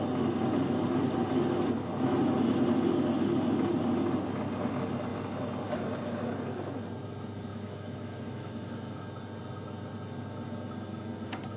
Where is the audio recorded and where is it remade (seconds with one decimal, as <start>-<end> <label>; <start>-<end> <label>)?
0.0-7.5 recorded; 7.5-9.1 remade; 9.1-11.6 recorded